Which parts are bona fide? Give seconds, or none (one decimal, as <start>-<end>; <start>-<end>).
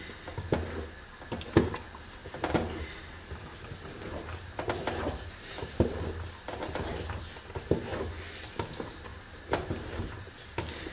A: 0.0-2.2; 7.2-9.1; 10.5-10.9